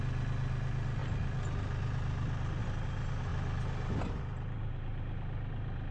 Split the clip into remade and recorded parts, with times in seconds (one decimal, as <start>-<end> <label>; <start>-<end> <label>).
0.0-5.9 recorded